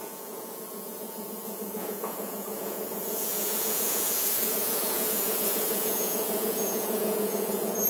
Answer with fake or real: fake